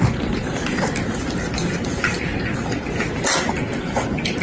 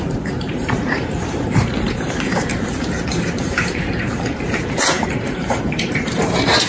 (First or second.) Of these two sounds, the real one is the first